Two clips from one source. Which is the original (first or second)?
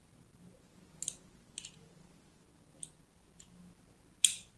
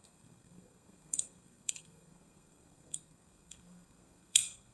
first